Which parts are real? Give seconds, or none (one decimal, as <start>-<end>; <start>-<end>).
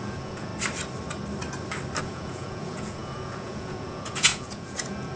0.5-2.0